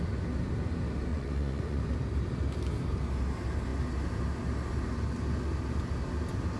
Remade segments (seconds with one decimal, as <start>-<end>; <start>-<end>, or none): 1.1-1.8